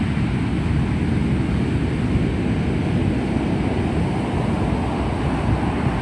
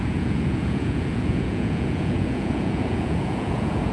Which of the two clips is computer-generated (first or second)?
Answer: second